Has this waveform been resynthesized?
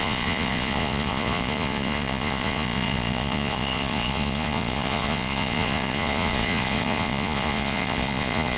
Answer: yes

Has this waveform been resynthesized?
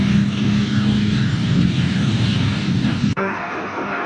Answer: yes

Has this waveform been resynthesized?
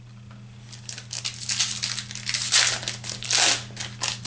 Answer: no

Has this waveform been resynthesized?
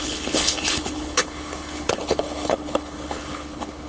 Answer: yes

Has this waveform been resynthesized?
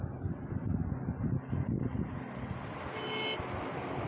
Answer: no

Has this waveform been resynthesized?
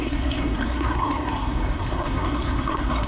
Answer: yes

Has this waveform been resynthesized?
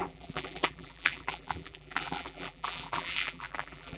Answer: yes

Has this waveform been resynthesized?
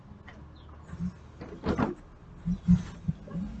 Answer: no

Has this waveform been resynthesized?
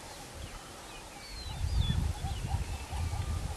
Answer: no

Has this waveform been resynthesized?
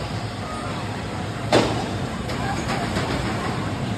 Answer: yes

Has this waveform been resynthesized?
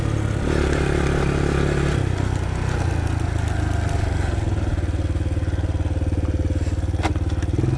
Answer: no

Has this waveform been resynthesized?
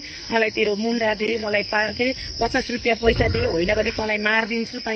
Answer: yes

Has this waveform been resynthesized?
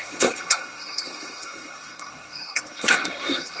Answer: yes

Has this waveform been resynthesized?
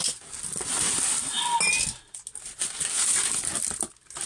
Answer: no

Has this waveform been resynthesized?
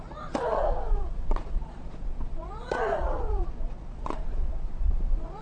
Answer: yes